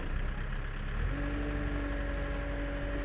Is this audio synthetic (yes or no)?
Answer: no